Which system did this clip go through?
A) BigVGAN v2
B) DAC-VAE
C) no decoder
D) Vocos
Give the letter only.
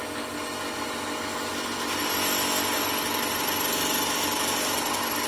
C